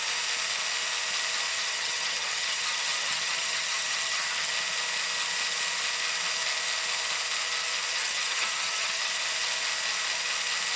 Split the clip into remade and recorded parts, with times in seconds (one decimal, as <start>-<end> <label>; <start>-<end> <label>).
0.0-1.5 recorded; 1.5-4.5 remade; 4.5-7.9 recorded; 7.9-9.1 remade; 9.1-10.8 recorded